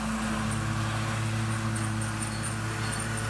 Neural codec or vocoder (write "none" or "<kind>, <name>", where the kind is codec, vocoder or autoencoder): none